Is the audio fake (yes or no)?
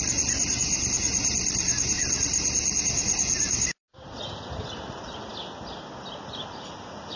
no